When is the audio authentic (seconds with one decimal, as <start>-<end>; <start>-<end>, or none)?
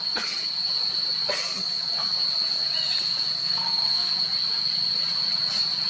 0.0-3.4; 4.1-5.9